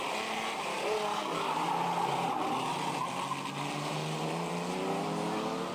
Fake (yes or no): no